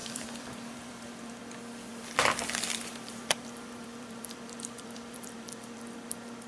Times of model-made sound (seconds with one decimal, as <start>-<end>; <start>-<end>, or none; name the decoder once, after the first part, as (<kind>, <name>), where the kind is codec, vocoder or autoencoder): 0.0-1.4 (vocoder, BigVGAN v2); 1.9-5.8